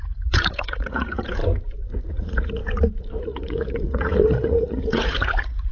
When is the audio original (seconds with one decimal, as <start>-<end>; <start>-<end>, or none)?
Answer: 1.4-2.1; 2.6-3.2